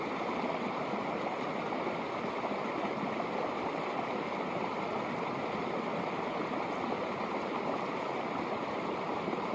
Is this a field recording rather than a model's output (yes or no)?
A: yes